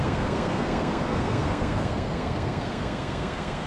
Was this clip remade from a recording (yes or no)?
yes